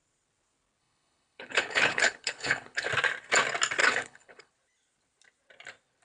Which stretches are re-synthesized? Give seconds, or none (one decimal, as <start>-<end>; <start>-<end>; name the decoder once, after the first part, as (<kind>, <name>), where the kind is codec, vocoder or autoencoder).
0.8-2.9 (codec, HILCodec); 3.8-4.5